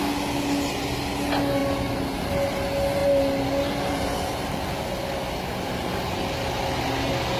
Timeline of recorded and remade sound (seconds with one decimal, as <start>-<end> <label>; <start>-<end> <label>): 0.0-7.4 recorded